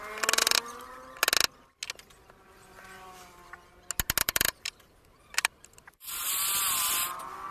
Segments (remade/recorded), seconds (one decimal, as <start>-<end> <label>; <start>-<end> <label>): 0.0-0.4 recorded; 0.4-1.2 remade; 1.2-4.2 recorded; 4.2-6.3 remade; 6.3-7.5 recorded